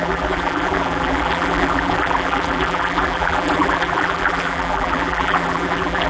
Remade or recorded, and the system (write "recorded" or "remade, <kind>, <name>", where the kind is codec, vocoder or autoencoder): remade, vocoder, BigVGAN v2